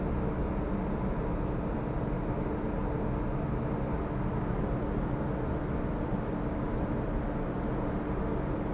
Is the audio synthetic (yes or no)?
no